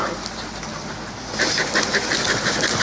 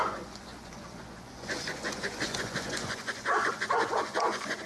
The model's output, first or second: second